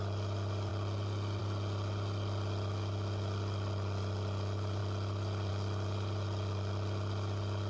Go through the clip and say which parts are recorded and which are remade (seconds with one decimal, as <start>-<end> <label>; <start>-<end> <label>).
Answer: 0.0-7.7 recorded